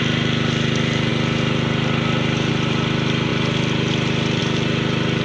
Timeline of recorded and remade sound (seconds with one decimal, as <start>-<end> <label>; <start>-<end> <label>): 0.0-5.2 recorded